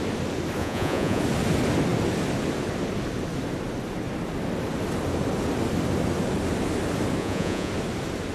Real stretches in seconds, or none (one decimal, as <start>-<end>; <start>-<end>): 0.0-0.6; 1.2-7.2; 7.7-8.3